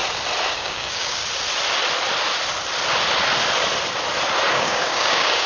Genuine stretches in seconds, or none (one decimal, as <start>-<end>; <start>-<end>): 0.0-0.5; 1.2-4.5